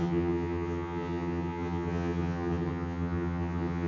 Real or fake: fake